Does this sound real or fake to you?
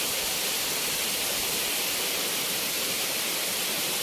real